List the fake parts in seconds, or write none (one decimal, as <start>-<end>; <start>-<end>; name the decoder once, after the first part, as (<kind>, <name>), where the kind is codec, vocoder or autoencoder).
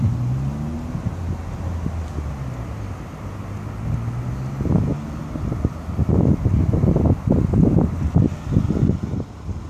none